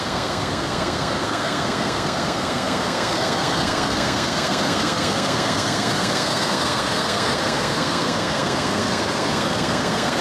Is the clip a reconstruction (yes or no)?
yes